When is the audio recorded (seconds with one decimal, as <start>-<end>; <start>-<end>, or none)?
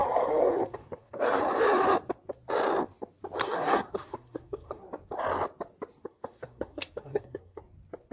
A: 1.4-3.4; 4.8-6.0; 7.6-8.1